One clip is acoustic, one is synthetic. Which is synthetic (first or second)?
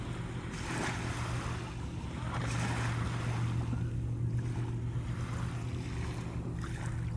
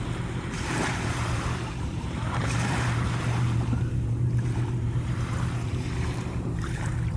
second